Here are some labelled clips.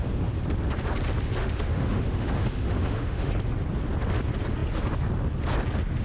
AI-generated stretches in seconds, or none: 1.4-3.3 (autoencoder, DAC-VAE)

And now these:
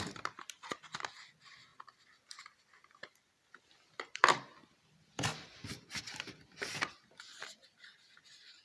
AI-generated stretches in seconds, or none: 1.7-6.8 (vocoder, BigVGAN v2)

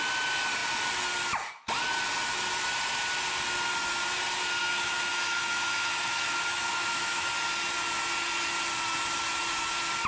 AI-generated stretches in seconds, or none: 4.6-7.3 (autoencoder, DAC-VAE)

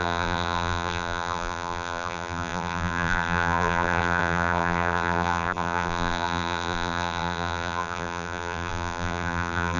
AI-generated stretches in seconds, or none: 0.0-9.8 (vocoder, BigVGAN v2)